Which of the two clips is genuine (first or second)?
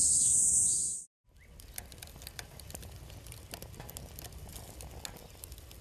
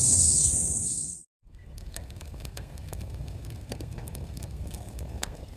first